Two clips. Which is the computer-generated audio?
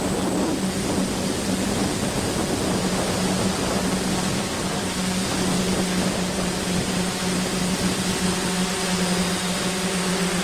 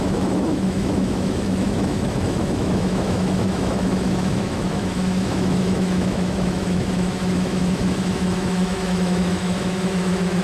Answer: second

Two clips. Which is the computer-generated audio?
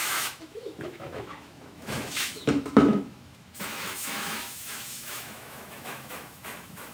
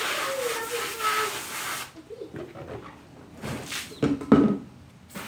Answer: first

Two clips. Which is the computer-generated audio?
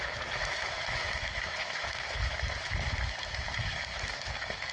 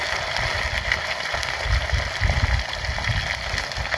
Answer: first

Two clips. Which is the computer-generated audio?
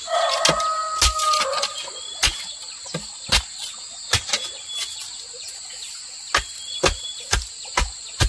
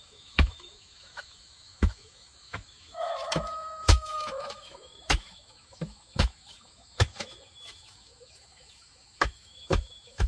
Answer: second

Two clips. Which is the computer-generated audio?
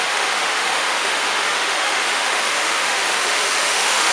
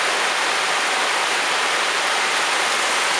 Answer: first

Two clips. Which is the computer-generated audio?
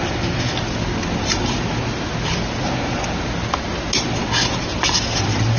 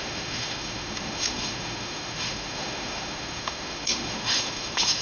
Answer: second